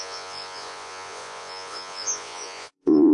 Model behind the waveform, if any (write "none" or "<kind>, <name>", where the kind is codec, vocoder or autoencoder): vocoder, Vocos